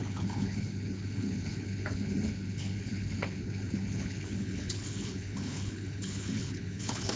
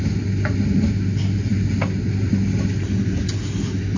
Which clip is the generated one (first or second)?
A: first